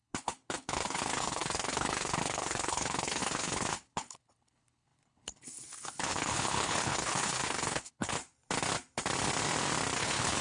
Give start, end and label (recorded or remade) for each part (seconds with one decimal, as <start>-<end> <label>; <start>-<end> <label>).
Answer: 0.0-8.2 remade; 8.2-10.0 recorded; 10.0-10.4 remade